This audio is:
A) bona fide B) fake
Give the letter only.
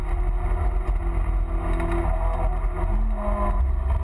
A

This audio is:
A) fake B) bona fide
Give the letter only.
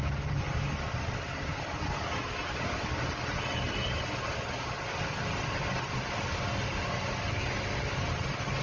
B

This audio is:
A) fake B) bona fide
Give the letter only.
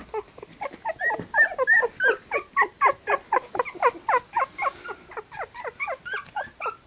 B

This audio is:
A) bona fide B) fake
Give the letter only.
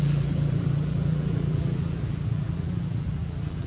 B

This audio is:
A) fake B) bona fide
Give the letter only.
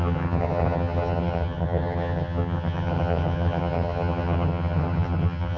A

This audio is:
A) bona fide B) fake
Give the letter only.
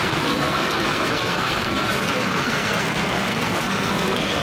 B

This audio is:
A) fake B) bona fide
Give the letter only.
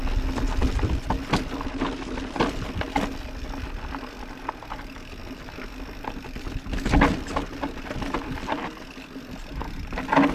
B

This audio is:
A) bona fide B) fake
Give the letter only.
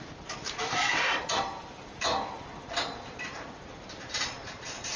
B